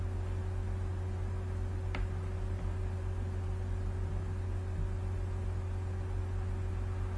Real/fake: real